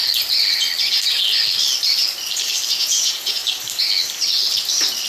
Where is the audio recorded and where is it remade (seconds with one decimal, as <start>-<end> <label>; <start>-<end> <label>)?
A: 0.0-2.7 recorded; 2.7-3.4 remade; 3.4-5.1 recorded

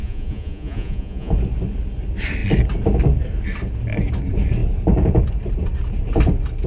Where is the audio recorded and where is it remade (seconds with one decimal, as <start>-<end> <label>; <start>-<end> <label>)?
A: 0.0-1.3 remade; 1.3-6.7 recorded

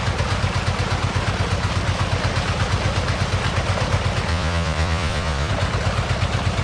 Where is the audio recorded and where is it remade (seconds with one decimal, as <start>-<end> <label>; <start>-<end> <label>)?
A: 0.0-4.3 recorded; 4.3-5.5 remade; 5.5-6.6 recorded

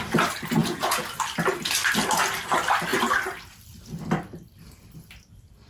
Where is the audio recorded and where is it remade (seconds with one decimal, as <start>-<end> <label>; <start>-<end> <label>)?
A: 0.0-0.6 recorded; 0.6-1.1 remade; 1.1-5.7 recorded

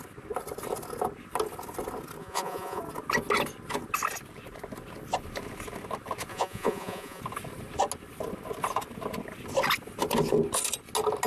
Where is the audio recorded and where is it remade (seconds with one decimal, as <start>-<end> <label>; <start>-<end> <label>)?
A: 0.0-2.2 recorded; 2.2-2.8 remade; 2.8-6.3 recorded; 6.3-7.2 remade; 7.2-11.3 recorded